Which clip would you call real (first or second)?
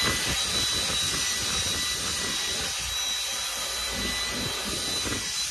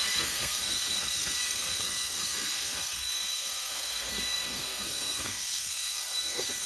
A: first